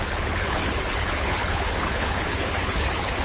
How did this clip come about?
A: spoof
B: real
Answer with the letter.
A